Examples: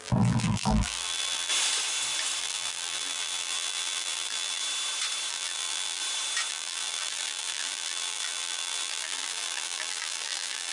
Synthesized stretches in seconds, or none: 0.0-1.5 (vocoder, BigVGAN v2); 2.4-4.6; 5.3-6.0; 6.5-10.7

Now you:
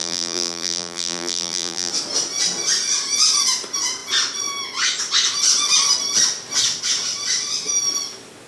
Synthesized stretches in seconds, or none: 0.0-1.9 (vocoder, BigVGAN v2)

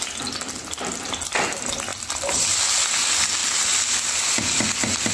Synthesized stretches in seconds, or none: none